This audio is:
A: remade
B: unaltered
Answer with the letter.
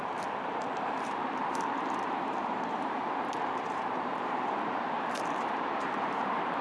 A